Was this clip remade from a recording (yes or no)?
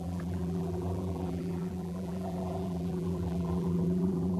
yes